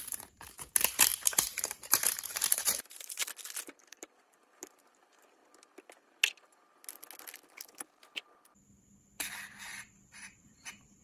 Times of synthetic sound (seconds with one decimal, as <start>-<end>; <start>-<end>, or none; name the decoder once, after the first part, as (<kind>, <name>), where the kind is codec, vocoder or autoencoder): 0.0-3.2 (vocoder, BigVGAN v2); 3.9-5.4; 9.6-11.0